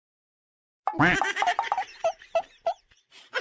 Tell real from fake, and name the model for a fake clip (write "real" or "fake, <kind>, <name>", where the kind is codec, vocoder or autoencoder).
real